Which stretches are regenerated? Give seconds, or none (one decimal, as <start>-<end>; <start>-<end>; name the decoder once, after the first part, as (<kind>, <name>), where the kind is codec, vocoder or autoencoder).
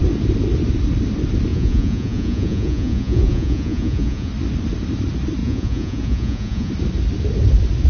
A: 1.5-4.3 (vocoder, Vocos); 5.4-6.7